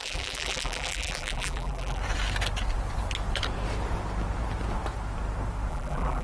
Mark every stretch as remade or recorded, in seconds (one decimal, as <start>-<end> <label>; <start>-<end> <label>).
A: 0.0-2.0 remade; 2.0-5.7 recorded; 5.7-6.2 remade